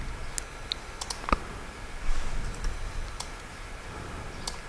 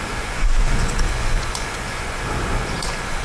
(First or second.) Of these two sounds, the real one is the first